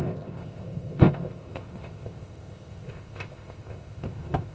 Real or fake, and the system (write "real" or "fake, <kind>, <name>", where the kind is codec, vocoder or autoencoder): fake, codec, ZipCodec